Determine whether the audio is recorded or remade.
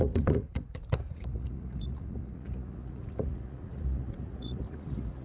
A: remade